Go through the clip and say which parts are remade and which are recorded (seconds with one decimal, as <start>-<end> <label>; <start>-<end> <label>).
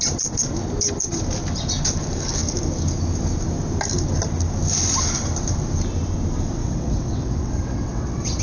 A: 0.0-6.6 recorded; 6.6-8.4 remade